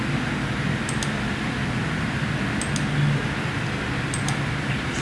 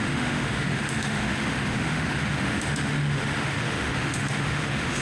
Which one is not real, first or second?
second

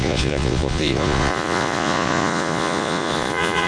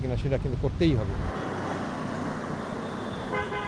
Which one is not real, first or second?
first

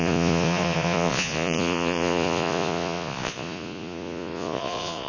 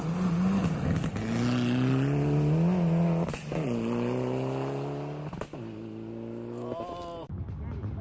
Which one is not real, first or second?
first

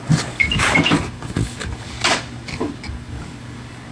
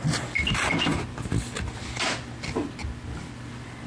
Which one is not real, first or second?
first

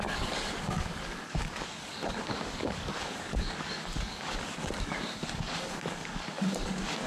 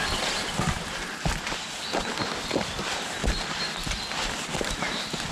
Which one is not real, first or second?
first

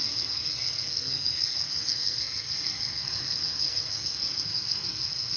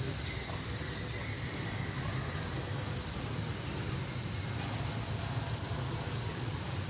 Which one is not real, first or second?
first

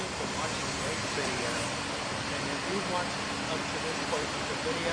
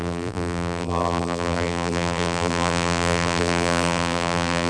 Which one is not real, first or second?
second